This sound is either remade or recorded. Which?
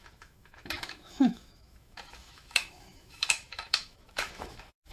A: remade